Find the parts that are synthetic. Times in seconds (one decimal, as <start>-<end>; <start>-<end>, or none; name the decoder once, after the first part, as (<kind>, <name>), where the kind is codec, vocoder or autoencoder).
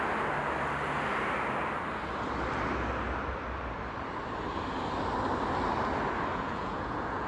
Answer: 6.3-7.3 (vocoder, Vocos)